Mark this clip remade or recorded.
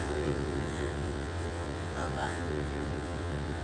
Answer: remade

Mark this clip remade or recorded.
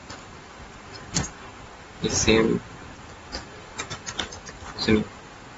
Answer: recorded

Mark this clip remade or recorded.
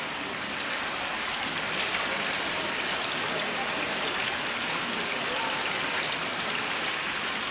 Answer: remade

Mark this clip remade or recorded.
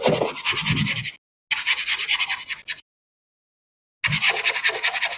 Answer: recorded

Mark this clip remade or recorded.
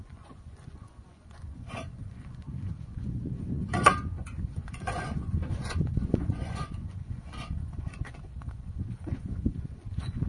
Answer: remade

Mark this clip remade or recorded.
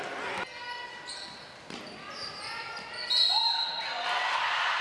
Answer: recorded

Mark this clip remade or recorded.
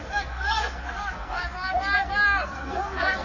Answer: remade